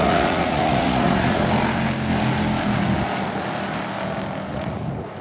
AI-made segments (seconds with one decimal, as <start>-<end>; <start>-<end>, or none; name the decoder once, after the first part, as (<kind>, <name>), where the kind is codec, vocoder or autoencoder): 0.0-1.4 (vocoder, Vocos); 4.5-5.2